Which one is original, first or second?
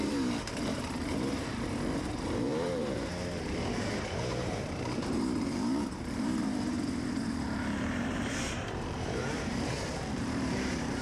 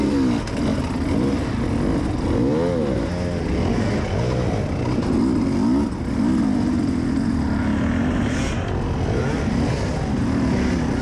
second